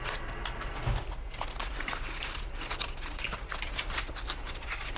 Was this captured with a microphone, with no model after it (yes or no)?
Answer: yes